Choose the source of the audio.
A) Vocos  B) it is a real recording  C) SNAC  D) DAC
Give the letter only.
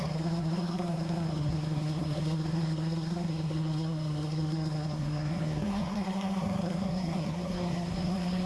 C